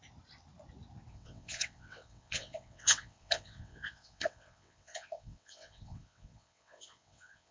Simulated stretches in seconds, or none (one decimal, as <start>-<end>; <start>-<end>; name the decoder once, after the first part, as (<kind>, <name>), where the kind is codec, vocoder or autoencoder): 1.1-7.5 (vocoder, WaveNeXt)